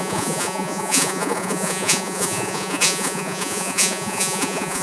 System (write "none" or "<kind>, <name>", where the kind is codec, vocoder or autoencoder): vocoder, Vocos